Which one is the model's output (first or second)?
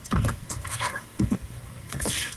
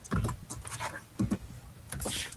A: first